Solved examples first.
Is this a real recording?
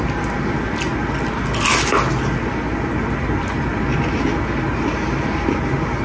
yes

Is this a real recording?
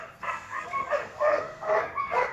no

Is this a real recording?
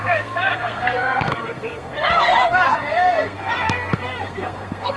no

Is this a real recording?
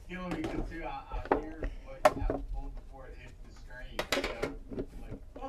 yes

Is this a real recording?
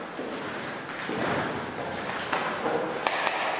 yes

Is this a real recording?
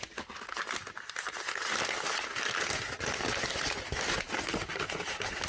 yes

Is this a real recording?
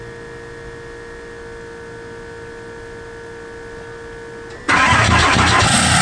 yes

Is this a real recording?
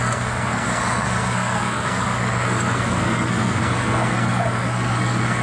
no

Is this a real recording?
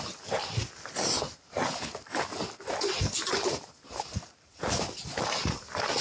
yes